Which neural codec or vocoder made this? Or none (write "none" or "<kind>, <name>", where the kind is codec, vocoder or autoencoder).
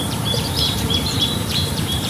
vocoder, BigVGAN v2